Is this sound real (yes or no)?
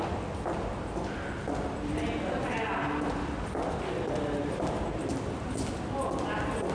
yes